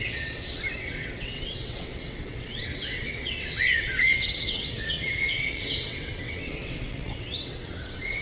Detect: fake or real fake